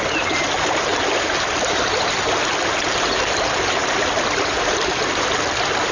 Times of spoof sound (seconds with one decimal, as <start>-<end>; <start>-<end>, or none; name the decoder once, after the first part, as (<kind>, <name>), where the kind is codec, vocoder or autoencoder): none